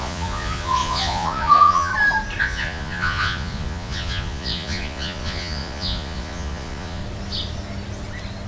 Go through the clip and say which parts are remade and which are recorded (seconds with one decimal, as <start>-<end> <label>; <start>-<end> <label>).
0.0-1.9 remade; 1.9-2.4 recorded; 2.4-7.0 remade; 7.0-8.5 recorded